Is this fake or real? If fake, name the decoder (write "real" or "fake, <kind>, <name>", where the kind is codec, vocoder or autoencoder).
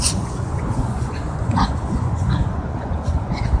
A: fake, vocoder, Vocos